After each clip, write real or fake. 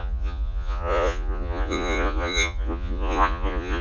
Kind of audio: fake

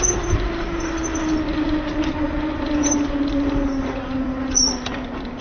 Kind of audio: real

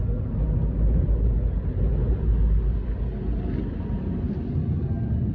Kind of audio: real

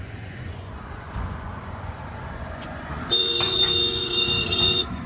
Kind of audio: fake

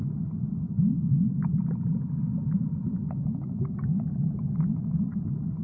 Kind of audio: real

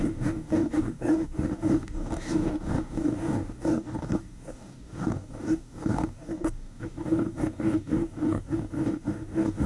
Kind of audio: fake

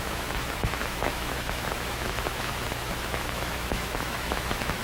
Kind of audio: fake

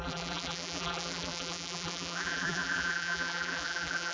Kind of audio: fake